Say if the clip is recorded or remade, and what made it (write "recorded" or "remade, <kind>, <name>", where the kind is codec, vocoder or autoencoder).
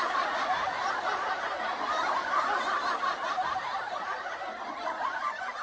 remade, vocoder, BigVGAN v2